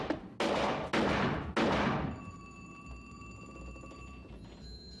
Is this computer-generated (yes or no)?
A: no